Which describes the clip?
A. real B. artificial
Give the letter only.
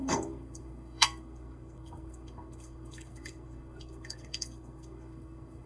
B